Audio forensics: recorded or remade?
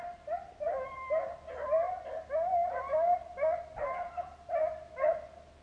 recorded